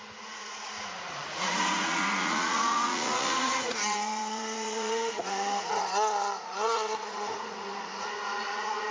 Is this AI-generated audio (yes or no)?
yes